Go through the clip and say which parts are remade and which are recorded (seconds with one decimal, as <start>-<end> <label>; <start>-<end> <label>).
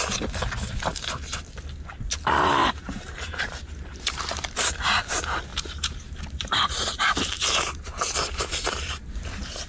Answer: 0.0-2.6 recorded; 2.6-4.7 remade; 4.7-5.5 recorded; 5.5-9.7 remade